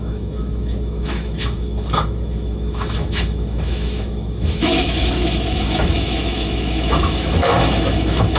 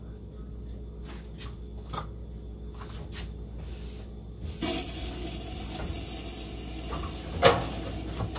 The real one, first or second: second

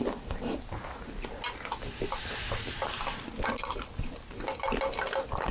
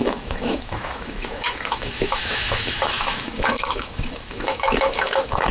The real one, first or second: first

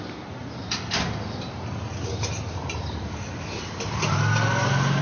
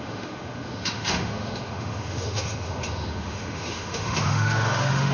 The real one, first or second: first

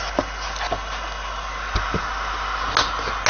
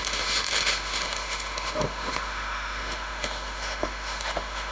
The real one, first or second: first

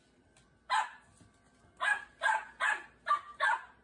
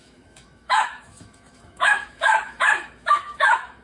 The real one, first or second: first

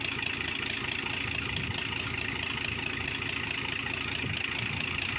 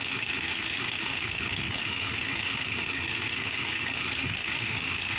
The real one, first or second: first